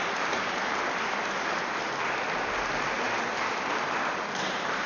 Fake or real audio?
real